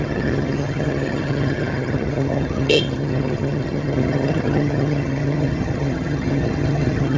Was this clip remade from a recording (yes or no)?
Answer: yes